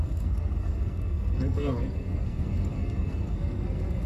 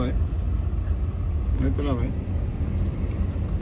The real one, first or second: second